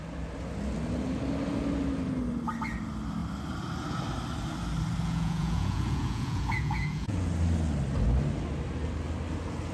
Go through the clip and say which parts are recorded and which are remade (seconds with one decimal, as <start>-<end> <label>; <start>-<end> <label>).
0.0-5.0 recorded; 5.0-7.3 remade; 7.3-9.7 recorded